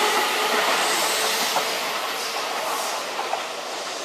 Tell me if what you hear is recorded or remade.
recorded